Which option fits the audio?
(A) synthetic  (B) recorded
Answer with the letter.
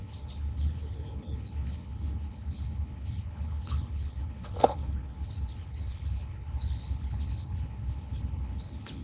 A